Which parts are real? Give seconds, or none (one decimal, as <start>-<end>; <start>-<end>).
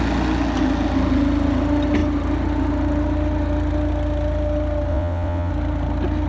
0.0-4.9; 5.5-6.3